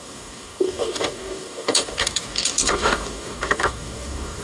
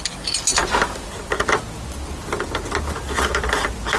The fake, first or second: first